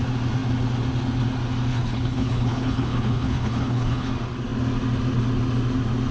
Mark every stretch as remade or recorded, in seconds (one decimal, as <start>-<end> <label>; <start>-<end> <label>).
0.0-1.7 recorded; 1.7-4.1 remade; 4.1-6.1 recorded